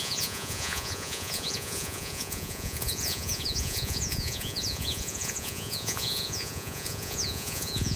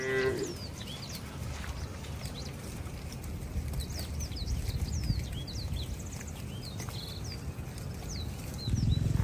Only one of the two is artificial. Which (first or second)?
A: first